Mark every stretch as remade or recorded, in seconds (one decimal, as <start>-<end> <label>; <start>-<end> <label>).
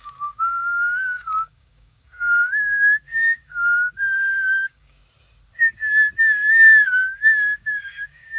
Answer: 0.0-5.0 remade; 5.0-6.5 recorded; 6.5-8.4 remade